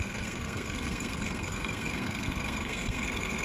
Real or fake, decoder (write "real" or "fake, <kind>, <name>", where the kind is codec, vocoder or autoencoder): fake, codec, SNAC